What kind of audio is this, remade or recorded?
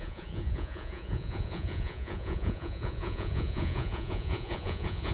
remade